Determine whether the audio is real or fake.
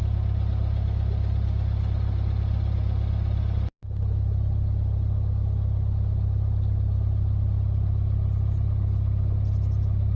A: real